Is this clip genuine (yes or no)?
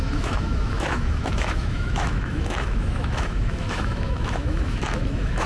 no